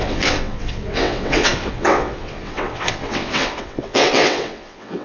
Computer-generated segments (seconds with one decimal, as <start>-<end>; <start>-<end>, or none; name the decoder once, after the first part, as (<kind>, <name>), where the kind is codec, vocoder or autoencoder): 0.0-5.0 (vocoder, WaveNeXt)